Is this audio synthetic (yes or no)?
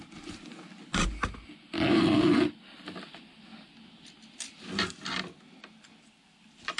no